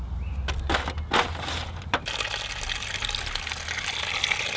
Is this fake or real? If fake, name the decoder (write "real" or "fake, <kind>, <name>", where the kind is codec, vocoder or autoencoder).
real